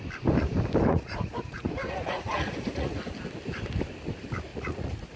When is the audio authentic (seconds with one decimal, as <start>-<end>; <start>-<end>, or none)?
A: 0.0-0.9; 3.1-4.5